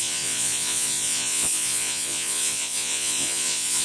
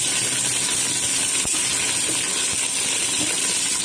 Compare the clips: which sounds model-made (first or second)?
first